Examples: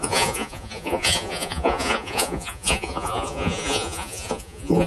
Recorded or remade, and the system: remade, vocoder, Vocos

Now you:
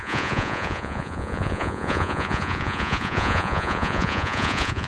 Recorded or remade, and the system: remade, vocoder, Vocos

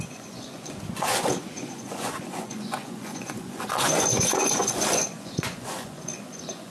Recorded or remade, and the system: remade, vocoder, Vocos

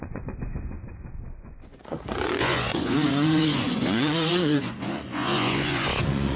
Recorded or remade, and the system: remade, vocoder, Vocos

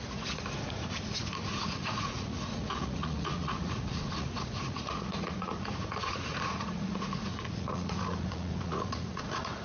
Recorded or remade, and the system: remade, vocoder, Vocos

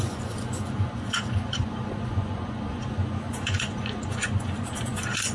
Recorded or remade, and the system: remade, vocoder, Vocos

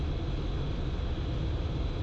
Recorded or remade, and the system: recorded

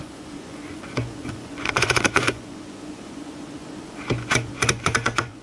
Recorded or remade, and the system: remade, vocoder, Vocos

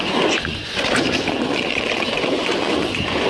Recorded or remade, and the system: remade, vocoder, Vocos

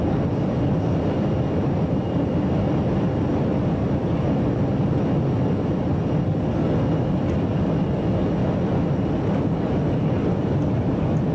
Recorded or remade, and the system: recorded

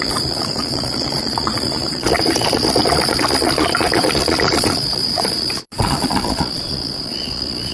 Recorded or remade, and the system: remade, vocoder, Vocos